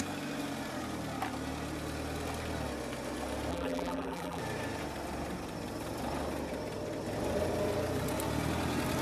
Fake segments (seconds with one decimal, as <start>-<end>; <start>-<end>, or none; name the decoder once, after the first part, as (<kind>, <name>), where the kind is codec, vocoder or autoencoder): 3.5-4.4 (vocoder, BigVGAN v2)